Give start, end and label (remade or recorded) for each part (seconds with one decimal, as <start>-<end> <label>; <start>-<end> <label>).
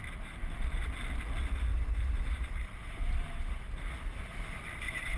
0.0-5.2 recorded